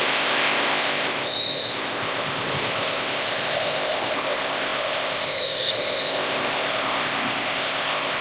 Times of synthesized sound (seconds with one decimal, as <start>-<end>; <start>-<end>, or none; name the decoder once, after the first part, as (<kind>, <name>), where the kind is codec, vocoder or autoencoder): 0.0-8.2 (codec, ZipCodec)